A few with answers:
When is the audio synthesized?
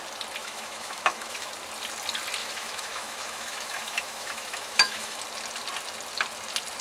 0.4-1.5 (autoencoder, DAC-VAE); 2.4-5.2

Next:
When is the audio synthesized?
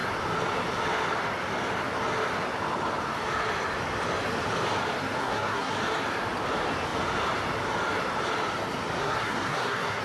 5.2-5.7 (codec, SNAC); 9.0-10.0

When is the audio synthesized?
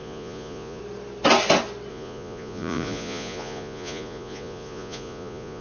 0.0-0.8 (vocoder, Vocos); 1.9-5.6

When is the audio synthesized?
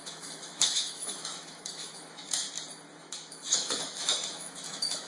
0.0-2.5 (autoencoder, DAC-VAE); 3.0-5.1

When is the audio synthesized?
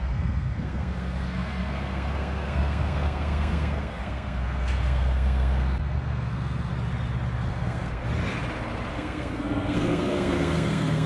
0.0-6.7 (codec, SNAC); 7.5-8.0; 8.9-11.1